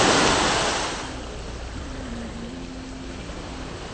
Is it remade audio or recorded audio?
recorded